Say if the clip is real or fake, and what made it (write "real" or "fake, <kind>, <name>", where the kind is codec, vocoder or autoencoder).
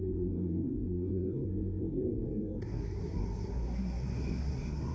fake, codec, SNAC